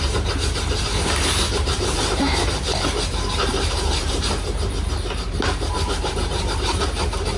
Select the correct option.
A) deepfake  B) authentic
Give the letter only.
A